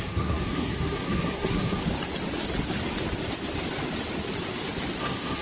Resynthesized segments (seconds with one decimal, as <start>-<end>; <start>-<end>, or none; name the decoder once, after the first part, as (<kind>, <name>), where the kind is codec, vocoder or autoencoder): 0.0-1.8 (codec, SNAC); 5.0-5.4